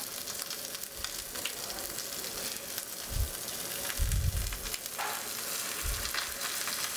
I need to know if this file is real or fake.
real